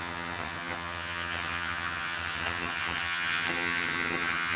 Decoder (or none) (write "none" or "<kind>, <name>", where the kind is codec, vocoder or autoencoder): vocoder, HiFi-GAN